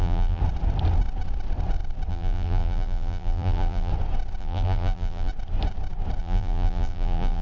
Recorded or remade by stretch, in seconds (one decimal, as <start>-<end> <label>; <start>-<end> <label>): 0.0-0.4 remade; 0.4-2.1 recorded; 2.1-3.9 remade; 3.9-4.4 recorded; 4.4-5.3 remade; 5.3-6.2 recorded; 6.2-7.4 remade